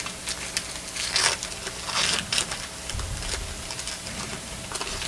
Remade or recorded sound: recorded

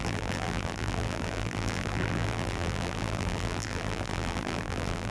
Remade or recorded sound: remade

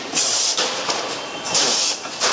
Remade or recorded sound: remade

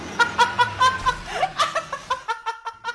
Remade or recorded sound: recorded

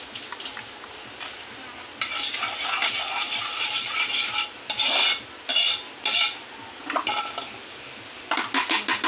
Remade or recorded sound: recorded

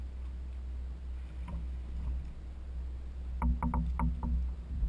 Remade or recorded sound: recorded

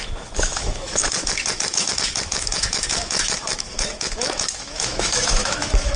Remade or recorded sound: remade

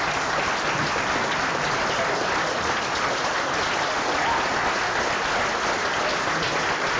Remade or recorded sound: recorded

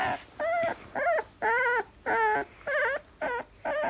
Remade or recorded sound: recorded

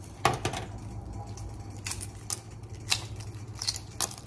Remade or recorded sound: recorded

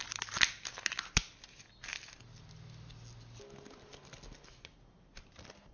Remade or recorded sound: recorded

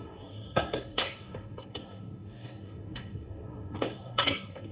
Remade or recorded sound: remade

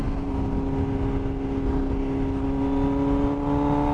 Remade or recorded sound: recorded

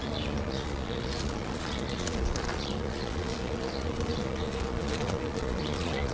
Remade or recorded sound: remade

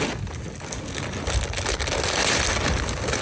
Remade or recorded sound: recorded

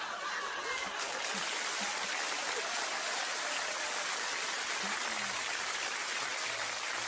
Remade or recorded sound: recorded